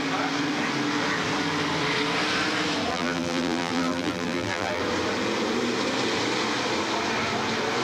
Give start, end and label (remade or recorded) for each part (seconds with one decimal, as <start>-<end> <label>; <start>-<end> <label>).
0.0-2.9 recorded; 2.9-4.8 remade; 4.8-7.8 recorded